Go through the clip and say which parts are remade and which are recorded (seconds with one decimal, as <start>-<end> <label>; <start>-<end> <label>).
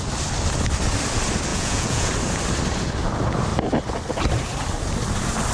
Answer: 0.0-1.5 recorded; 1.5-2.1 remade; 2.1-5.5 recorded